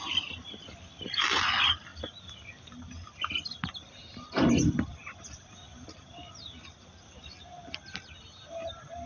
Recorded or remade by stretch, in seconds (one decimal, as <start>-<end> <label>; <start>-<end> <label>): 0.0-9.1 recorded